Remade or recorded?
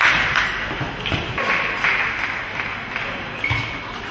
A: recorded